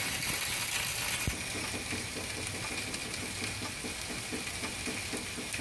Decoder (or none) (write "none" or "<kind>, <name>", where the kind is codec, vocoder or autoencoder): none